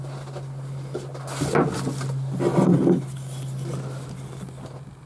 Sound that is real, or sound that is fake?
real